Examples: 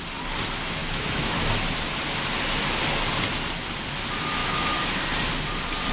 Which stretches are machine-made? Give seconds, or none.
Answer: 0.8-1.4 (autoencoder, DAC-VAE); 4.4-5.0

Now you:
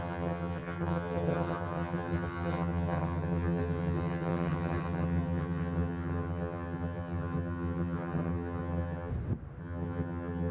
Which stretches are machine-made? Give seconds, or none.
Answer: 0.0-9.1 (vocoder, HiFi-GAN); 9.6-10.5

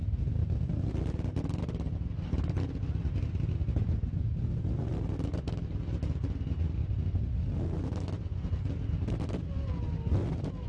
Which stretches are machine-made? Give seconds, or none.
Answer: none

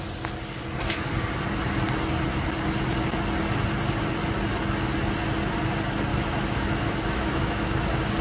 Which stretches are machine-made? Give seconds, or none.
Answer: 6.1-7.7 (autoencoder, DAC-VAE)

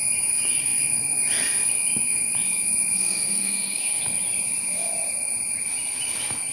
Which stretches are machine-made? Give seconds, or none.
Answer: 3.0-4.0 (codec, DAC)